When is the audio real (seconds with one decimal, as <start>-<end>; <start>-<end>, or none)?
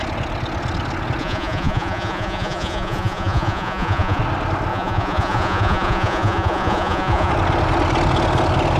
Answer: 0.0-1.2; 4.2-4.7; 7.3-8.8